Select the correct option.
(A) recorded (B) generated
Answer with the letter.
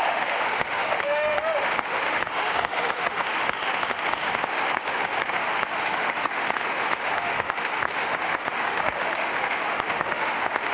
B